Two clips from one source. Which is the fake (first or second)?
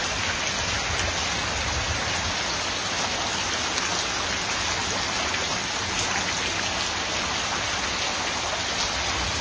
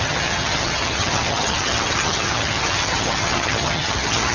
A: second